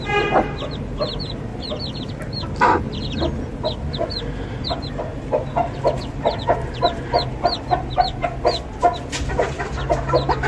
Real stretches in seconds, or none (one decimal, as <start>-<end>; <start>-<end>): 1.5-4.6; 5.1-9.4